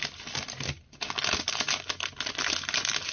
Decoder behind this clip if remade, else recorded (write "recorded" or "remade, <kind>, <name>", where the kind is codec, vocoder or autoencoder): recorded